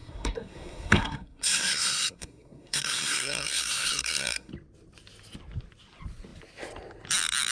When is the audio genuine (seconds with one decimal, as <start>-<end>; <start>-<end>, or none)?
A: 4.5-7.5